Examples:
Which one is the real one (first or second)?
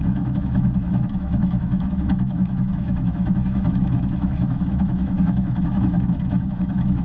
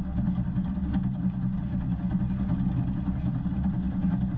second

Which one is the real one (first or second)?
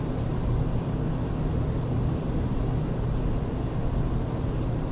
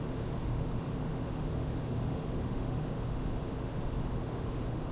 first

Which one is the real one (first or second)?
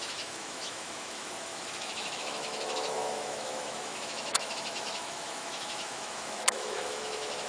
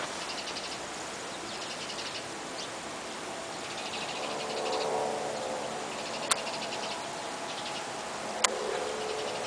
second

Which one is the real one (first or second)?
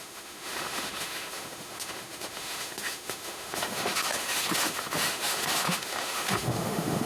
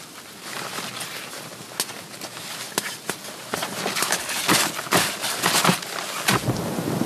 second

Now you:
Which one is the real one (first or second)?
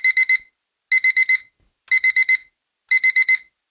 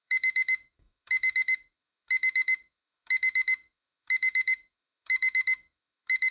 first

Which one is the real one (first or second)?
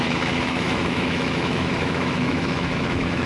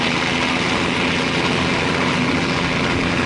second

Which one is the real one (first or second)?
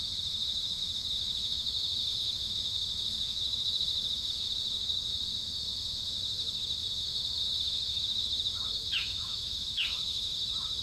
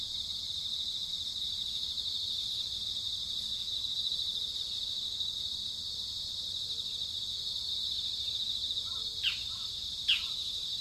second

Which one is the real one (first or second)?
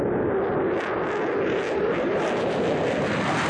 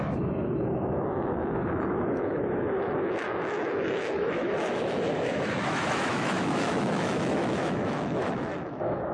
first